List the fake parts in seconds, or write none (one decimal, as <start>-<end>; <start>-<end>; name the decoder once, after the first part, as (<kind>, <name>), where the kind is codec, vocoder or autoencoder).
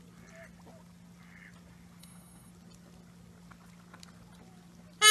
2.0-2.5 (autoencoder, DAC-VAE)